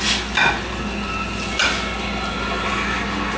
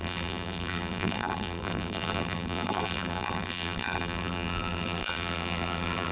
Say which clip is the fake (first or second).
second